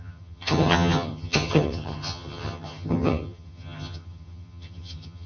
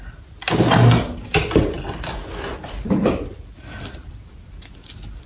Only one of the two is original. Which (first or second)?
second